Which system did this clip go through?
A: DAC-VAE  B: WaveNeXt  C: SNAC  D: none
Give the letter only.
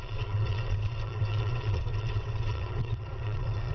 B